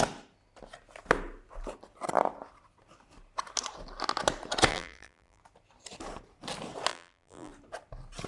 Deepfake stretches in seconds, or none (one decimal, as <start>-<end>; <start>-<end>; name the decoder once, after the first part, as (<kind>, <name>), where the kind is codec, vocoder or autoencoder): 4.7-5.4 (vocoder, BigVGAN v2); 6.9-7.5